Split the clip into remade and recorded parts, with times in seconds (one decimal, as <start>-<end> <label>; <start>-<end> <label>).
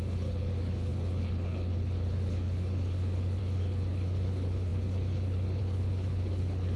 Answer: 0.0-6.8 remade